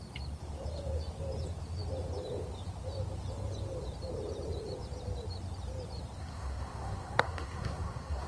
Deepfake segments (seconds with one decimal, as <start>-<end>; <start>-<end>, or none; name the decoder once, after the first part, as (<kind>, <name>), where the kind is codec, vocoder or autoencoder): 6.2-8.3 (codec, SNAC)